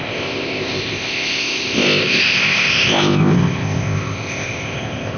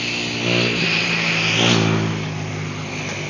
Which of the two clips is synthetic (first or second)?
first